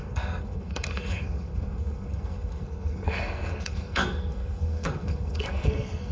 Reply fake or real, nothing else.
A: fake